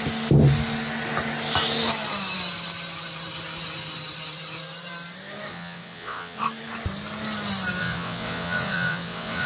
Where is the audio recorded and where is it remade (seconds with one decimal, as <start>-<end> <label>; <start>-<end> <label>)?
0.0-5.5 recorded; 5.5-6.4 remade; 6.4-7.8 recorded; 7.8-9.5 remade